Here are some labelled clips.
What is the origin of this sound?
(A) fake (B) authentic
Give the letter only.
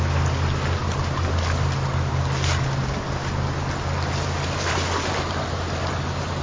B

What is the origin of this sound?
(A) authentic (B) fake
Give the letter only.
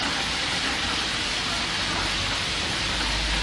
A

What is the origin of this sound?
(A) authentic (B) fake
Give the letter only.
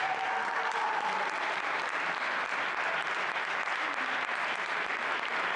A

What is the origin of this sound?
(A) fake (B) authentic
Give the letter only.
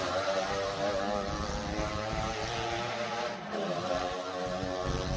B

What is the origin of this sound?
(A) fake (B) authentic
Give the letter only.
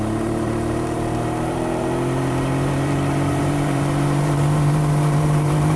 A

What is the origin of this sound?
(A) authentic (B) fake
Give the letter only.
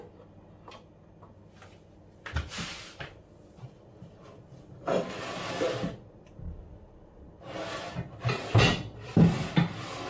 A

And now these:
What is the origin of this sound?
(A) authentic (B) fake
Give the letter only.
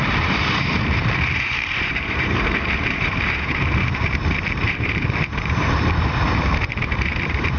B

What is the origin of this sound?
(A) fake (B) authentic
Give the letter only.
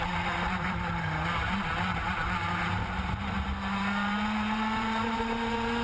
A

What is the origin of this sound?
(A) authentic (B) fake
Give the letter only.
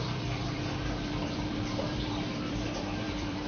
B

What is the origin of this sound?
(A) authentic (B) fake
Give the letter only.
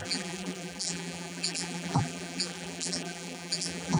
B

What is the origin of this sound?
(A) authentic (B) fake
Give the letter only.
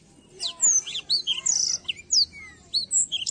A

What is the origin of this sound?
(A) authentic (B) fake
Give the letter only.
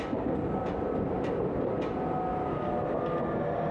A